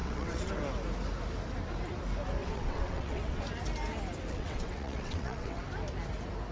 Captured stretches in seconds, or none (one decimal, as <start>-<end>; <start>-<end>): 0.5-2.4; 3.4-4.3; 5.6-6.5

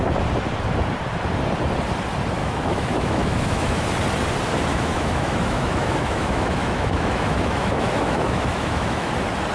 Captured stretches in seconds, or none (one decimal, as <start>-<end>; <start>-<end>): 0.0-2.4; 3.9-4.7; 9.1-9.5

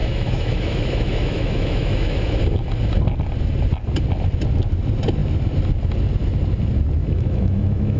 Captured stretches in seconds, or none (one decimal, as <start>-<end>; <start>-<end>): 2.4-7.0